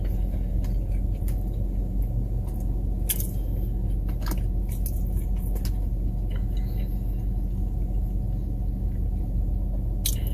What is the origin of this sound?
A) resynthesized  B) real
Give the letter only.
B